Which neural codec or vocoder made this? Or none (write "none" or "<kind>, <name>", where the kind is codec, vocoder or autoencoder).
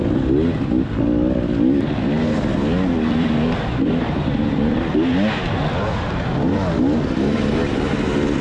none